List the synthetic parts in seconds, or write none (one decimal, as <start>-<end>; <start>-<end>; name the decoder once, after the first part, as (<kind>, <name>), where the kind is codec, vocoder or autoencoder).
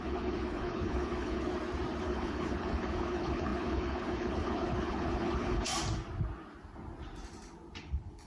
0.0-1.5 (codec, HILCodec); 2.0-5.7; 7.8-8.3